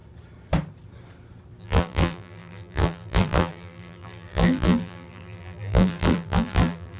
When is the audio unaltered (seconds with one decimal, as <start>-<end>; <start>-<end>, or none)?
0.0-1.6